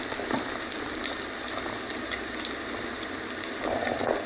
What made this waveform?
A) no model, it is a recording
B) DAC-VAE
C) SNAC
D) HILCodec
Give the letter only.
A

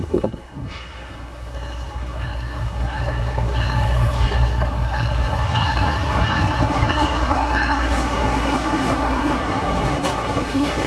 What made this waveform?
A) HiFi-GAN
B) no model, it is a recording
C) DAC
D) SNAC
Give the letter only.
D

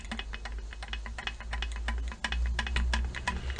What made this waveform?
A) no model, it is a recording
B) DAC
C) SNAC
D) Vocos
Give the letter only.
A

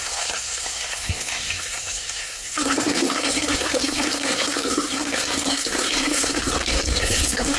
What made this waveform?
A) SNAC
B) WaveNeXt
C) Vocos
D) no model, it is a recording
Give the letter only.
A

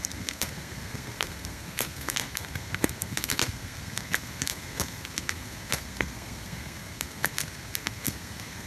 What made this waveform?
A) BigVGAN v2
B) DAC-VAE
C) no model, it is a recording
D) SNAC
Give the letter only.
D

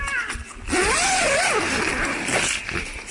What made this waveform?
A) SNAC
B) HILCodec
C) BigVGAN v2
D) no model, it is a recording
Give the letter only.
D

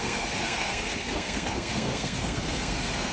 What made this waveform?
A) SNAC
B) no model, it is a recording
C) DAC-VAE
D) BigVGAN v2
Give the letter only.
A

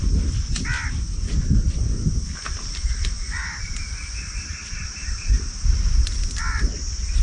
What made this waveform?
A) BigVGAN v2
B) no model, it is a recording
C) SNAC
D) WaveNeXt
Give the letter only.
B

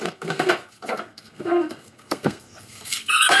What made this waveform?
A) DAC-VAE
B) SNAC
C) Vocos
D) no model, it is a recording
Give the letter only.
B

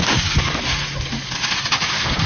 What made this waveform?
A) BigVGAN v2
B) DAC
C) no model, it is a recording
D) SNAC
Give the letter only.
C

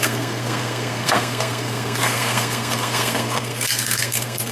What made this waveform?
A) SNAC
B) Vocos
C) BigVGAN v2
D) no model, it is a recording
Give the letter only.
A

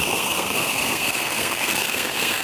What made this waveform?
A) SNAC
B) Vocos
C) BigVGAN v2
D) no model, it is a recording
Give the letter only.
A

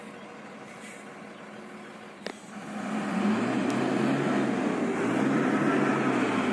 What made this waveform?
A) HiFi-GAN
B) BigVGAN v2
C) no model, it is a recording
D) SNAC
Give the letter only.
C